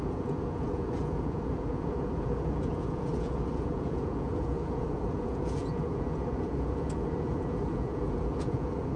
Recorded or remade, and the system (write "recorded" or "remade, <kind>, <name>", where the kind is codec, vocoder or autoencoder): remade, vocoder, Vocos